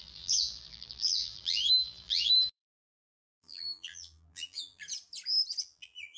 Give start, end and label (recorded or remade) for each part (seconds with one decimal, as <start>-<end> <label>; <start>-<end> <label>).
0.0-4.8 remade; 4.8-5.6 recorded; 5.6-6.2 remade

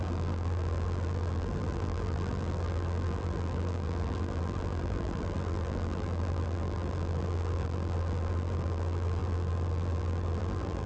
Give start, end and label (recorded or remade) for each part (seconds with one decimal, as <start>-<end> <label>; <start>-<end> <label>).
0.0-10.9 remade

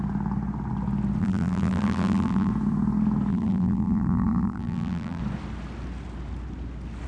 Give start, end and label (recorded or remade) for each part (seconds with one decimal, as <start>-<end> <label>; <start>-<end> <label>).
0.0-1.2 recorded; 1.2-2.5 remade; 2.5-3.3 recorded; 3.3-5.2 remade; 5.2-7.1 recorded

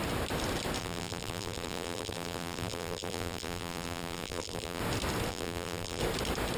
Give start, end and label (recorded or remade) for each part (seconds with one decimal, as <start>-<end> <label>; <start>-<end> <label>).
0.0-0.8 recorded; 0.8-4.8 remade; 4.8-5.3 recorded; 5.3-6.0 remade; 6.0-6.6 recorded